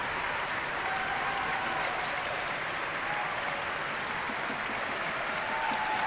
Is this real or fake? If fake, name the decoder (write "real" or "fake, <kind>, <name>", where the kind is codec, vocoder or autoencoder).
real